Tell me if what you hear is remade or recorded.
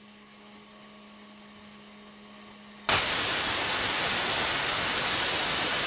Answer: recorded